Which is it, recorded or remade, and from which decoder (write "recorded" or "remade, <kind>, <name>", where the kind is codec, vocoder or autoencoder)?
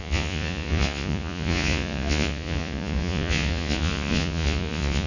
remade, vocoder, Vocos